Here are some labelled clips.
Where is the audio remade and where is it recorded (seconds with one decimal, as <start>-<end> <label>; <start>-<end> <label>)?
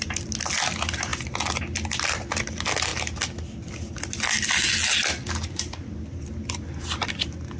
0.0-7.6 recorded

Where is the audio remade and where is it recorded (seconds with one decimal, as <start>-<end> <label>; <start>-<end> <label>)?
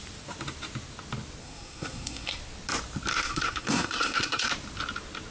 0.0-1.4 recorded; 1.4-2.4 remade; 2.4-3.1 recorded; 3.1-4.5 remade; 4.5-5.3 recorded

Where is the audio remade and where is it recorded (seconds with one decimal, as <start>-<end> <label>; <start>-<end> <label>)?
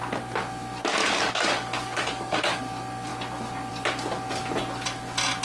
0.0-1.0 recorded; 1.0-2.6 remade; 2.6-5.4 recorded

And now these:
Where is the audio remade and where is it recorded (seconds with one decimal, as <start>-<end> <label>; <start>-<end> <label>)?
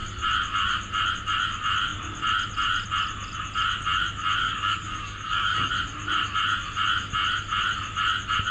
0.0-4.4 recorded; 4.4-5.7 remade; 5.7-8.5 recorded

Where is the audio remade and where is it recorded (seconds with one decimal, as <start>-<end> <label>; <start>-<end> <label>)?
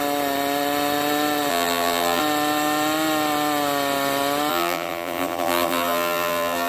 0.0-1.5 recorded; 1.5-2.2 remade; 2.2-4.5 recorded; 4.5-6.7 remade